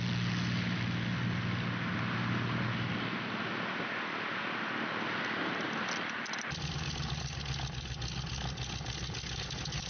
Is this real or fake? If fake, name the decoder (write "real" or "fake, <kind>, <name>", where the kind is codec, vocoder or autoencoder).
real